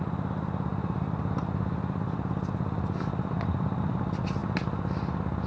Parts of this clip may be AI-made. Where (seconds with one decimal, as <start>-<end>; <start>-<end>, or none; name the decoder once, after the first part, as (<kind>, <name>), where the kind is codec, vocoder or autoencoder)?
none